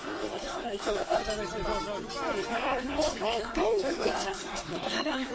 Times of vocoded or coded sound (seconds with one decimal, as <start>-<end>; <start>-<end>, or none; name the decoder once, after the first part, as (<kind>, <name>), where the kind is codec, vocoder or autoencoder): 0.0-1.2 (codec, SNAC); 2.5-5.3

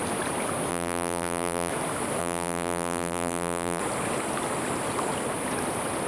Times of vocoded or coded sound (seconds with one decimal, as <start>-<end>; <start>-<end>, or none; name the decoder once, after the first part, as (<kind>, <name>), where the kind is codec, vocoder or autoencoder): 0.7-1.7 (vocoder, BigVGAN v2); 2.2-3.8

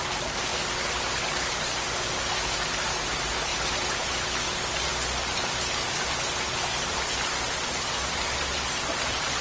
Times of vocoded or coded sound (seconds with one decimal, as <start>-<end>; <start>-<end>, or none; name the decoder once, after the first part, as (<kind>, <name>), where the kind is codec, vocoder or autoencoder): none